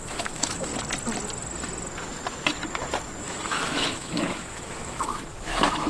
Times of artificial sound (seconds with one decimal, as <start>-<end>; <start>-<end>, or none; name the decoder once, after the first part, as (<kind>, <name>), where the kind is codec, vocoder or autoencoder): 0.0-0.7 (autoencoder, DAC-VAE); 3.2-5.9